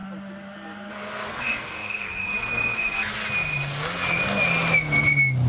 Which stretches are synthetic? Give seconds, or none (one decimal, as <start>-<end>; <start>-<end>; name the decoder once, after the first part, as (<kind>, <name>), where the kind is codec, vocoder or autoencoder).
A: 1.3-3.1 (codec, SNAC)